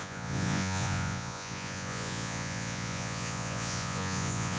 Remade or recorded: remade